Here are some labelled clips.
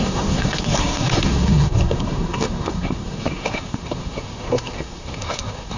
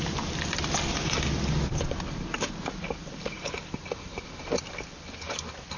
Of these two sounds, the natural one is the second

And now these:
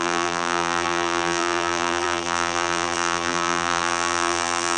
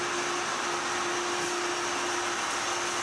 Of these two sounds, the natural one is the second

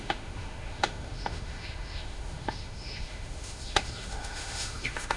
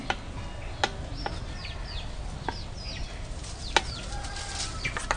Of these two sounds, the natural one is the second